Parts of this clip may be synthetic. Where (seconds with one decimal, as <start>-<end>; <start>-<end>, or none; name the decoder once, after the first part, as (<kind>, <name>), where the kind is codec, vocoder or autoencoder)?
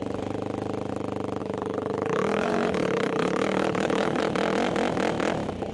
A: 1.4-4.2 (codec, HILCodec)